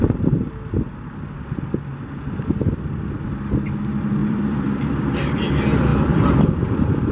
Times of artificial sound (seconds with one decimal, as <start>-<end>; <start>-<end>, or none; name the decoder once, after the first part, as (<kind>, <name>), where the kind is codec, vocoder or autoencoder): 4.2-5.5 (vocoder, BigVGAN v2); 5.9-7.1